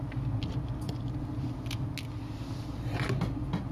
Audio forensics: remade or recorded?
recorded